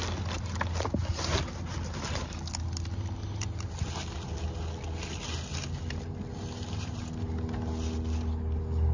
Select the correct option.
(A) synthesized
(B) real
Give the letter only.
B